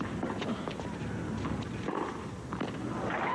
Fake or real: real